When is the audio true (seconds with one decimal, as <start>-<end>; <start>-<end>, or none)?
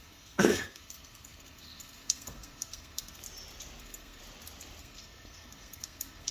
3.2-3.8; 4.2-4.8